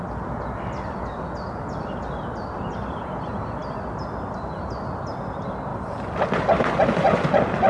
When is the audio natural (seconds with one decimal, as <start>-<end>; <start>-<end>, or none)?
0.0-7.7